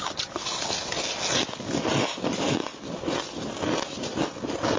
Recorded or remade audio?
recorded